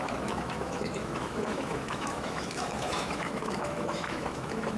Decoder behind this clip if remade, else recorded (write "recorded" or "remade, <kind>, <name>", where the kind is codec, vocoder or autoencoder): remade, autoencoder, DAC-VAE